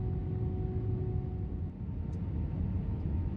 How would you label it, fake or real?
real